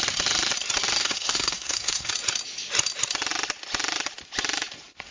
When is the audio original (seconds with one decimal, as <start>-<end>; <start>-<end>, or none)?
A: 0.0-1.0; 2.1-5.1